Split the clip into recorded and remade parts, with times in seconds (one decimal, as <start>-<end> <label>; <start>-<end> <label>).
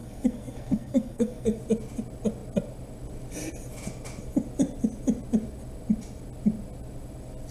0.0-1.6 remade; 1.6-7.5 recorded